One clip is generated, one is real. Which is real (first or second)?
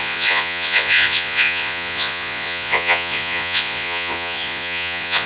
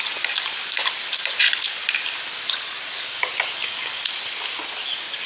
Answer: second